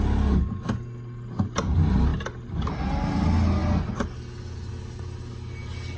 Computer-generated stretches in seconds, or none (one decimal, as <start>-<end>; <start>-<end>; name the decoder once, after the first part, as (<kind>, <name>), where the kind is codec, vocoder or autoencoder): none